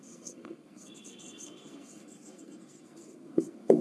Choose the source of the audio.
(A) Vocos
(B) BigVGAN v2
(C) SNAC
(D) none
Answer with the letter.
C